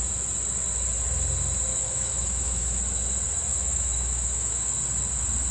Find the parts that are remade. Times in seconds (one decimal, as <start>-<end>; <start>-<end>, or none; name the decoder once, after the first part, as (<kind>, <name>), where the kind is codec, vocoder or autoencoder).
1.7-2.8 (autoencoder, DAC-VAE); 3.5-4.7